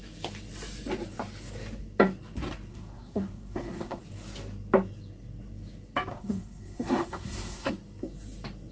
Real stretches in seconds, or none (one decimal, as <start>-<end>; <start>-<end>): 0.0-2.7; 4.0-6.1; 7.7-8.7